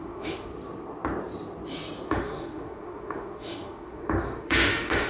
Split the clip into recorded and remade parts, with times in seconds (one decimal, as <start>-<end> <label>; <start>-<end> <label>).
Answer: 0.0-0.5 remade; 0.5-2.1 recorded; 2.1-5.1 remade